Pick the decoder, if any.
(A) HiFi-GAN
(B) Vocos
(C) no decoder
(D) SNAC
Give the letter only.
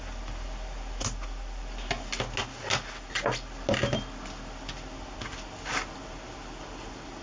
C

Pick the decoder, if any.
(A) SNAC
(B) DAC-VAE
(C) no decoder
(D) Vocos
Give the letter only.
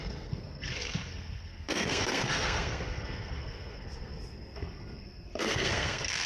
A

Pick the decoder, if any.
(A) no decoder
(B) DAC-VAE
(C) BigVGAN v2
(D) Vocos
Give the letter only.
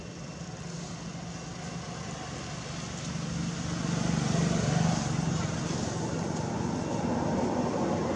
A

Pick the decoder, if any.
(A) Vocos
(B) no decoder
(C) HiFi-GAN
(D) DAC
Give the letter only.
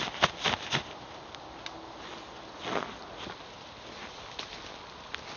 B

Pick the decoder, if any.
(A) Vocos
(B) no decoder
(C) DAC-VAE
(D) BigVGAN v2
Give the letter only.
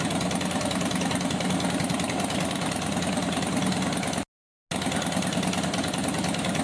B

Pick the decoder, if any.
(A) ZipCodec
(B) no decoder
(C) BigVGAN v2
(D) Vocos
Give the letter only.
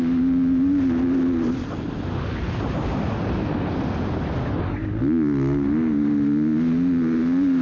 B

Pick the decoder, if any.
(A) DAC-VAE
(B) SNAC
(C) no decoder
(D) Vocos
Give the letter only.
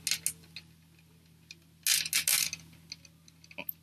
C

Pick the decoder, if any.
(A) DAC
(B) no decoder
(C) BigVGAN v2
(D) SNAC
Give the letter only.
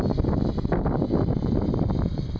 B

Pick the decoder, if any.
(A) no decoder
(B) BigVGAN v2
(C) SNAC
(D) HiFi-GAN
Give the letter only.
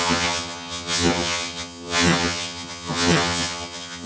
D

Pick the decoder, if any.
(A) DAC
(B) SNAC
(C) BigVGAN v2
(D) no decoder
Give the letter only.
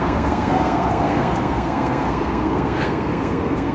B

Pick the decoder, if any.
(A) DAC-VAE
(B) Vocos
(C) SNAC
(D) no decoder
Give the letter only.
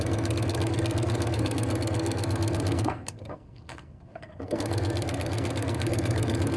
C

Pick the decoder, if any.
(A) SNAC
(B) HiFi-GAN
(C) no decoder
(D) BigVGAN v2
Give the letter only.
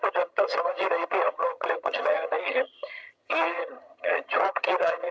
B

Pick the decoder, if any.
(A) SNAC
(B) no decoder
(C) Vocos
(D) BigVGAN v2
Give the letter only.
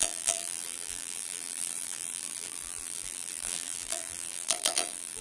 D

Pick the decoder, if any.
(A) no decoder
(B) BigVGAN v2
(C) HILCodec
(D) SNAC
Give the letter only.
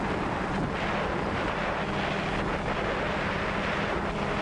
A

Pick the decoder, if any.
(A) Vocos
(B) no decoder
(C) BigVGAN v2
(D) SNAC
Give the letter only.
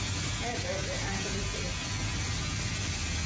B